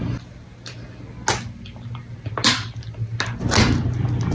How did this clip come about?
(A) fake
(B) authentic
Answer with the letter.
B